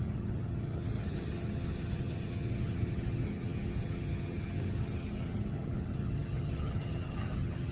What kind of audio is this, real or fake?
fake